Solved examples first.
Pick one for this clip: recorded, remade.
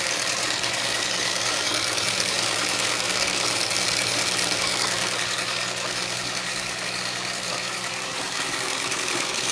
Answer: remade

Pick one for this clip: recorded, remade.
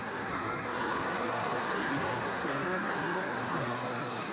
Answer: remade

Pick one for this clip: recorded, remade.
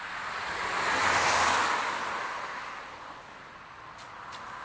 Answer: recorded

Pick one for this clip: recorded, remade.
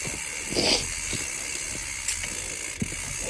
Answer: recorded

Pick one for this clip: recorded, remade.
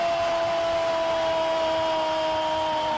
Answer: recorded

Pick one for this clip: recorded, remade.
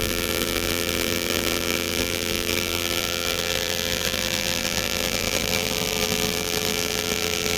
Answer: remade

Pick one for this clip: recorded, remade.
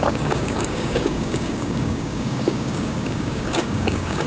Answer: remade